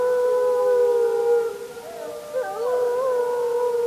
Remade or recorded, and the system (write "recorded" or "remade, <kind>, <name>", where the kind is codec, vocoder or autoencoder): recorded